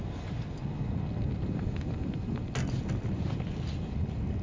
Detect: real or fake real